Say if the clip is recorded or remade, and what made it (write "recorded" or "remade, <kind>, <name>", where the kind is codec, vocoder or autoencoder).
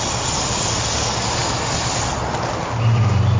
recorded